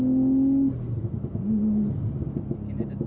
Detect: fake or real real